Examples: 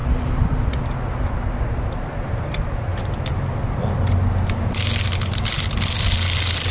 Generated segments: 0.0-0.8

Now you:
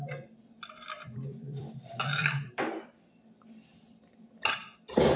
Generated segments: 0.0-4.6

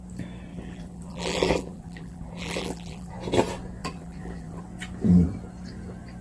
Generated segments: 0.5-3.1; 3.8-4.6

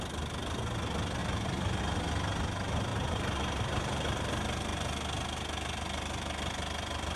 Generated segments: 1.2-1.8; 2.9-4.3

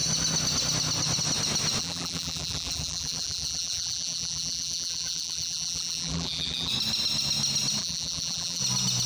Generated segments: 1.8-6.7; 7.8-8.6

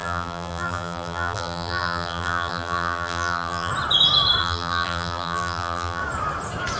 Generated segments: 0.0-3.7; 4.4-6.0